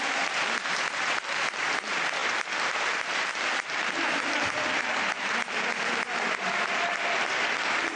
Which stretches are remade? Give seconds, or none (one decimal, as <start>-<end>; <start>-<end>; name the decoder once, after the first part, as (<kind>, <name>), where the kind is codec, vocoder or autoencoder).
none